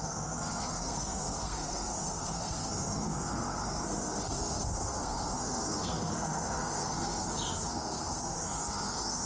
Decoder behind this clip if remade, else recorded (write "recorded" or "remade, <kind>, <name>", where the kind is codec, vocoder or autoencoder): remade, codec, SNAC